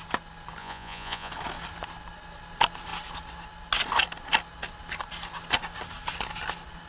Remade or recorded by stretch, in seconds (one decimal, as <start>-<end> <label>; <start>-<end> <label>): 0.0-0.6 recorded; 0.6-1.3 remade; 1.3-6.9 recorded